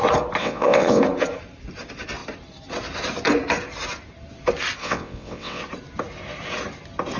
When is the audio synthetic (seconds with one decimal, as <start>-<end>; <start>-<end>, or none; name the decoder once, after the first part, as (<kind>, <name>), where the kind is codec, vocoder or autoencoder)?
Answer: 0.4-1.0 (vocoder, WaveNeXt); 4.8-5.6